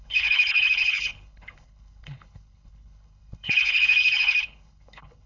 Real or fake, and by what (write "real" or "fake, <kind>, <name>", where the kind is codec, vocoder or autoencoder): fake, codec, HILCodec